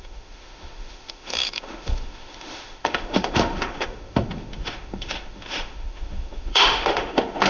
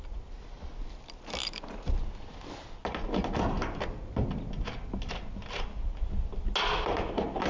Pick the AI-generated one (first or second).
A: first